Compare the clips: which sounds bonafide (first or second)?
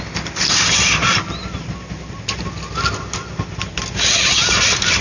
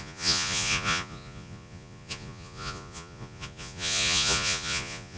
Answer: first